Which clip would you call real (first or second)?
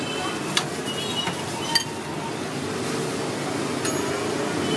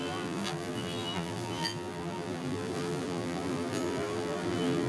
first